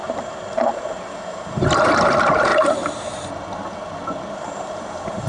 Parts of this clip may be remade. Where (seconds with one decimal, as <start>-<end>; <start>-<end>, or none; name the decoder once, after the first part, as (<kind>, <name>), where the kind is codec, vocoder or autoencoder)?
0.0-2.5 (vocoder, BigVGAN v2); 4.3-5.3